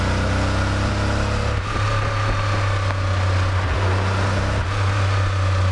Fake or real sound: real